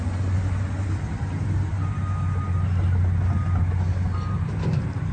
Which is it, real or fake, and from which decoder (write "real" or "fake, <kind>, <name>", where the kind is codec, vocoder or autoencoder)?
real